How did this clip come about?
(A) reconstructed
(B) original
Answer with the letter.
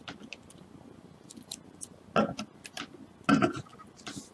B